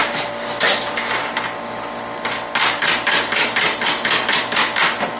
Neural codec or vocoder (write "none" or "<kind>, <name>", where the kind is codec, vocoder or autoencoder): none